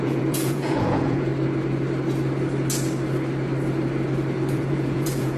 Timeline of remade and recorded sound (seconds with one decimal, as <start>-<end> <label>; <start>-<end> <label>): 0.0-1.3 remade; 1.3-4.5 recorded; 4.5-5.4 remade